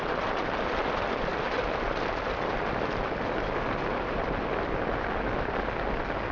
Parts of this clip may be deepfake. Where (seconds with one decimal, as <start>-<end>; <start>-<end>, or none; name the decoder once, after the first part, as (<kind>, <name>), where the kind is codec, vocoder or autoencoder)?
none